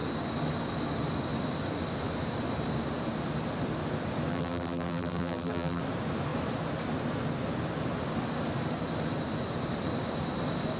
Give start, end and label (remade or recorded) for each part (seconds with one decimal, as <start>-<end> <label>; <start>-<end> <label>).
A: 0.0-4.3 recorded; 4.3-5.8 remade; 5.8-10.8 recorded